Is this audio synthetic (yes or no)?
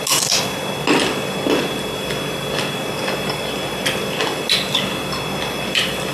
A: no